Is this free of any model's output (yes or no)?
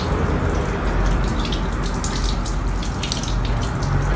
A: yes